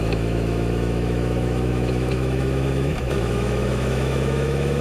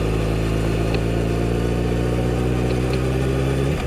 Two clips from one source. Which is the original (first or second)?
second